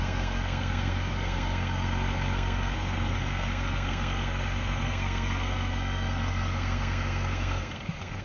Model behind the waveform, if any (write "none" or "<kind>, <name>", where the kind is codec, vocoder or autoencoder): codec, SNAC